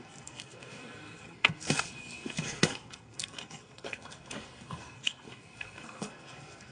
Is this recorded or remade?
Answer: remade